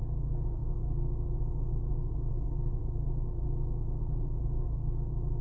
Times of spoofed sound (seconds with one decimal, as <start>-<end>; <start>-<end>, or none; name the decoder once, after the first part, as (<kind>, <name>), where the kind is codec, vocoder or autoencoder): none